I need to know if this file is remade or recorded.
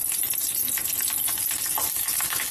recorded